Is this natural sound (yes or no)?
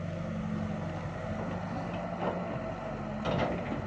yes